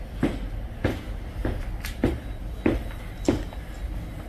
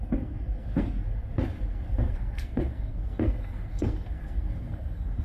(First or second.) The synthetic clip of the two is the second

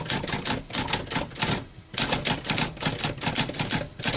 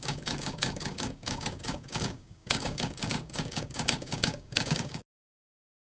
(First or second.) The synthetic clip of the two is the second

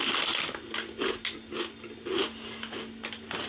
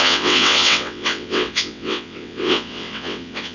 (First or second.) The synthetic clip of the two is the second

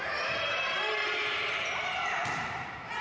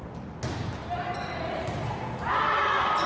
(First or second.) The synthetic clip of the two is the first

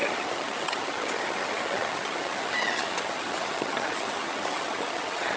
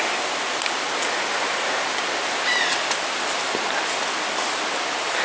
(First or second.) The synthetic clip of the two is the first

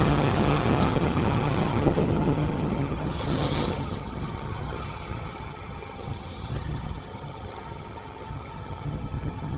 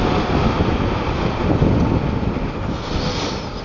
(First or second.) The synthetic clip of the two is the first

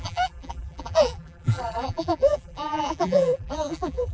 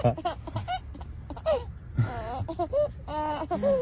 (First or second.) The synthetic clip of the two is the first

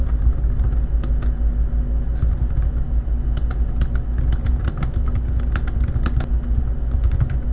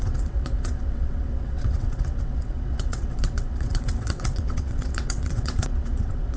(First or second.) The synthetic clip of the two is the second